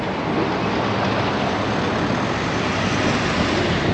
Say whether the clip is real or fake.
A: real